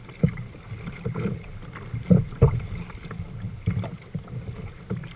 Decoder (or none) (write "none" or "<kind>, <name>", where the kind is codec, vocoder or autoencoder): none